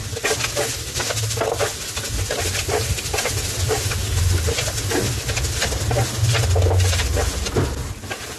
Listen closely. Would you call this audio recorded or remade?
recorded